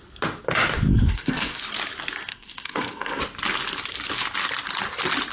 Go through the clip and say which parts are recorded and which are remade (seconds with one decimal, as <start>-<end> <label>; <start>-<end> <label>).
0.0-0.9 recorded; 0.9-1.6 remade; 1.6-2.3 recorded; 2.3-3.2 remade; 3.2-5.3 recorded